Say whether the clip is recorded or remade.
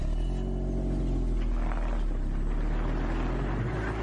recorded